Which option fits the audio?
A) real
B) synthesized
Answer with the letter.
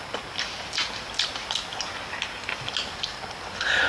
A